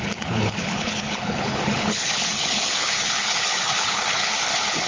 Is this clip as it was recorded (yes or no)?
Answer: no